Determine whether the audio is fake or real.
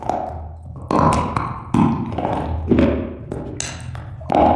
real